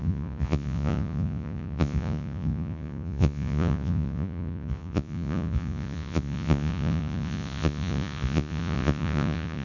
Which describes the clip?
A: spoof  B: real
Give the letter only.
A